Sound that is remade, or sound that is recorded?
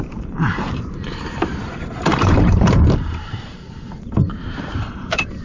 remade